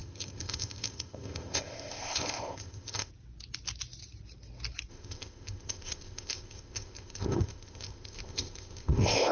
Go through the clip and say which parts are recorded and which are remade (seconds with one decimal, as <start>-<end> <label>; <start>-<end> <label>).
0.0-3.1 remade; 3.1-4.9 recorded; 4.9-9.3 remade